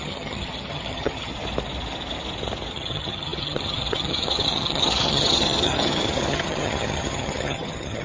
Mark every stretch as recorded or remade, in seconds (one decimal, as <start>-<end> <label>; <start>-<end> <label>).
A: 0.0-1.3 remade; 1.3-2.7 recorded; 2.7-8.0 remade